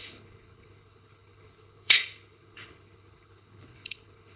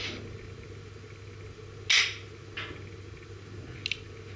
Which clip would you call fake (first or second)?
first